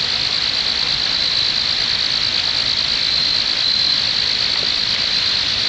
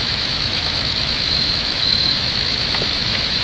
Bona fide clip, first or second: first